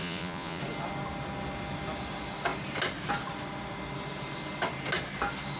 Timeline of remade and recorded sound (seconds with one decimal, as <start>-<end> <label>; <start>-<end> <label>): 0.0-0.6 remade; 0.6-5.6 recorded